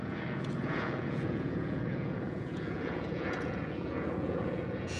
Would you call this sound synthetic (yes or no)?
yes